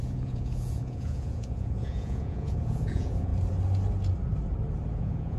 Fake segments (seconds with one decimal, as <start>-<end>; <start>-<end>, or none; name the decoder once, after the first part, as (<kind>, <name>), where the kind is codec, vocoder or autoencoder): 0.0-3.3 (vocoder, Vocos); 5.0-5.4